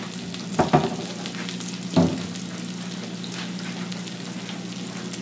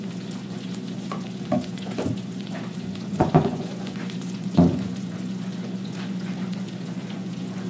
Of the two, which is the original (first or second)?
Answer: first